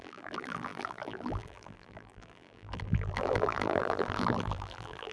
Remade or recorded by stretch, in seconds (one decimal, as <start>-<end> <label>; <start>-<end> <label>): 0.0-5.1 remade